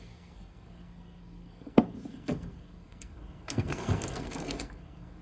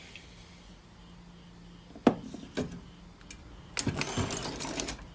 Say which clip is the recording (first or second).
second